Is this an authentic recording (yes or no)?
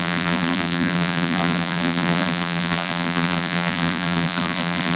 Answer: no